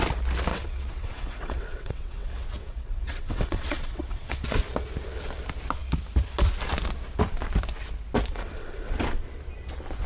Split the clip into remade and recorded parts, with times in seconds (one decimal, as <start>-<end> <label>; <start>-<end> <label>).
0.0-0.5 recorded; 0.5-4.4 remade; 4.4-8.3 recorded; 8.3-8.9 remade; 8.9-10.1 recorded